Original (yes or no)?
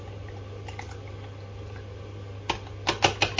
yes